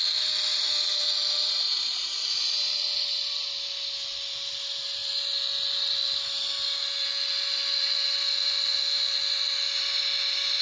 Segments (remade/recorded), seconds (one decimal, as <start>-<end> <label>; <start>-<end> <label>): 0.0-10.6 recorded